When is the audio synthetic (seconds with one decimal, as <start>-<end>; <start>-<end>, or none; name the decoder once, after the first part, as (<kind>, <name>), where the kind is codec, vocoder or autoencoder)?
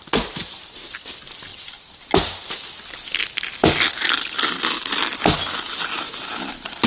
1.5-2.5 (vocoder, BigVGAN v2)